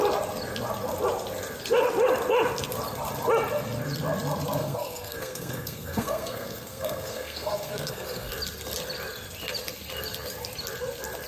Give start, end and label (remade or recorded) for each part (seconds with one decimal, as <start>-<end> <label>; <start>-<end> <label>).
0.0-4.6 recorded; 4.6-8.3 remade; 8.3-11.3 recorded